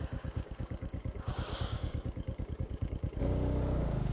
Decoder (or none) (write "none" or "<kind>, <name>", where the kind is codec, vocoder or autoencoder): codec, DAC